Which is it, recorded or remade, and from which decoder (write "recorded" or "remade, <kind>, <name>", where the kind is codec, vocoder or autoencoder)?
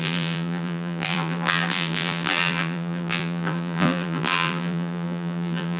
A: remade, vocoder, BigVGAN v2